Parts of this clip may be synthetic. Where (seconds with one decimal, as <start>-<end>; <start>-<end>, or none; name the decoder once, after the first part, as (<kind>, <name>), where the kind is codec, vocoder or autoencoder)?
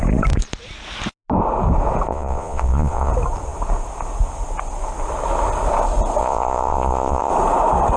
2.1-3.1 (vocoder, Vocos); 6.2-7.3